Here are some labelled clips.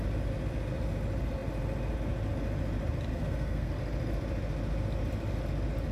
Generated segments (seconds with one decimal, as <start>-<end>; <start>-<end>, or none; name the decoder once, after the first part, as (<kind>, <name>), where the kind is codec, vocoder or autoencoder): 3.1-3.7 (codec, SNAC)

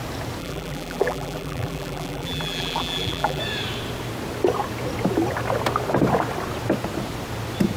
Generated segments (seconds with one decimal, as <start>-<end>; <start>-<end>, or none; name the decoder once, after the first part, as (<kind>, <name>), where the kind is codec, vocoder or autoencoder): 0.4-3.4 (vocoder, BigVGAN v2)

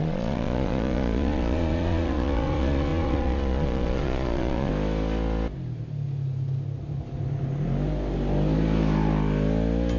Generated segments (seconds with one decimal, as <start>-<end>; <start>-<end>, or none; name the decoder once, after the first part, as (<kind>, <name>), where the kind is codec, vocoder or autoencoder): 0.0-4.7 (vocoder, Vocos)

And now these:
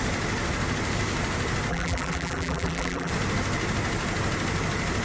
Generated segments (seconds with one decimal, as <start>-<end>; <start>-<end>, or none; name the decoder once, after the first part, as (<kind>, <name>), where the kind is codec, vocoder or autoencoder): 1.7-3.1 (vocoder, BigVGAN v2)